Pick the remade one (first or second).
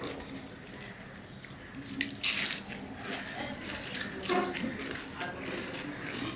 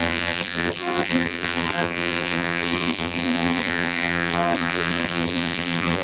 second